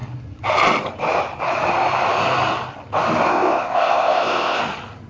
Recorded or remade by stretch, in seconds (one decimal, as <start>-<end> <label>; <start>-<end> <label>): 0.0-3.3 recorded; 3.3-4.6 remade; 4.6-5.1 recorded